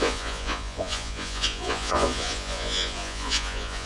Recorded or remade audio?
remade